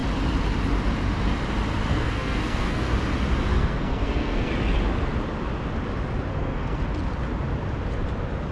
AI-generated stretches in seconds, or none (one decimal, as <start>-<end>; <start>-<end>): 1.9-2.9; 3.5-4.5; 6.3-6.8